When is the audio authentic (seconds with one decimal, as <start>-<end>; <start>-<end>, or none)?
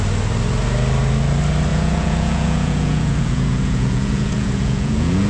0.0-1.7